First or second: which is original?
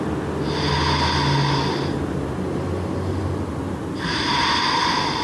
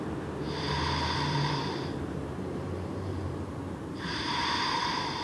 first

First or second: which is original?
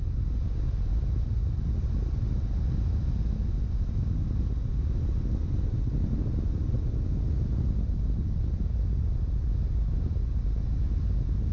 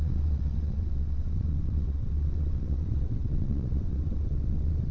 first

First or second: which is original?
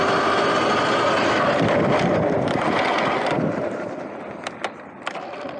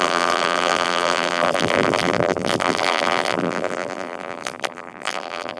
first